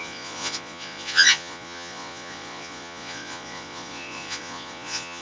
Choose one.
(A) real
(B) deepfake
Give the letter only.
B